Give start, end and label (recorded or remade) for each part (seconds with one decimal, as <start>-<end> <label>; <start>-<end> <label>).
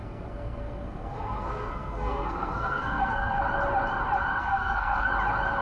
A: 0.0-3.4 remade; 3.4-4.4 recorded; 4.4-5.1 remade; 5.1-5.6 recorded